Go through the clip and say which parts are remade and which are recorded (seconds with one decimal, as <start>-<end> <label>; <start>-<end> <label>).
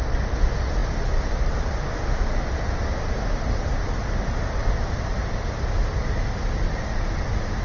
0.0-7.6 recorded